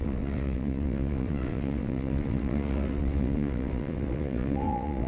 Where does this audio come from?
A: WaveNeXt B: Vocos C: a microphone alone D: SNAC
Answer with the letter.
A